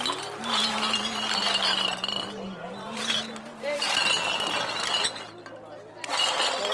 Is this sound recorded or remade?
recorded